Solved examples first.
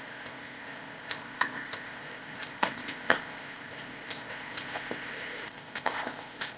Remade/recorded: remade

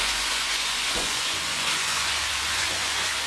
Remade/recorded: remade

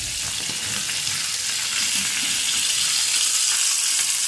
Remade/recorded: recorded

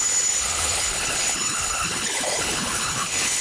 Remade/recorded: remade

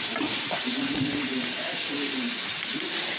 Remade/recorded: recorded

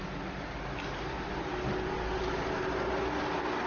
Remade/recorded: recorded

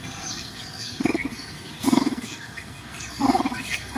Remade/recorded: remade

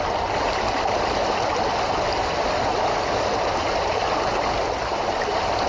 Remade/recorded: recorded